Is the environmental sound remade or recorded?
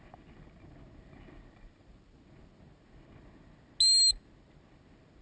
recorded